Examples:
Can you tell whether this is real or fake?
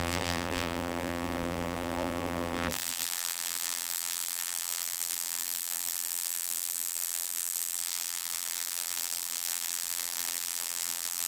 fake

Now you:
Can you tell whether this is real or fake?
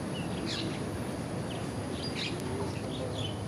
real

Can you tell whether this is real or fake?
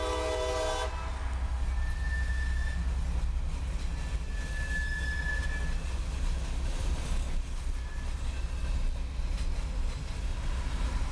real